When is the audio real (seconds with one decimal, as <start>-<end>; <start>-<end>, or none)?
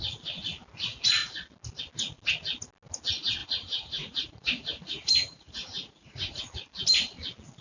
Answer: 0.0-3.4; 6.4-7.6